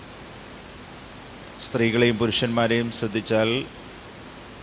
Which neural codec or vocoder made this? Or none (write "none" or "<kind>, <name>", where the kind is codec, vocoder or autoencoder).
none